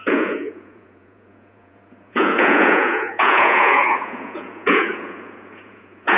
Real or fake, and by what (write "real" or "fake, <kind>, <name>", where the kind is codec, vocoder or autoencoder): fake, vocoder, Vocos